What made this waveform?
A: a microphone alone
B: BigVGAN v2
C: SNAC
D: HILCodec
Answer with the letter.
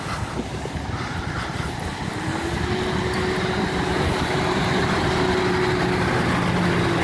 A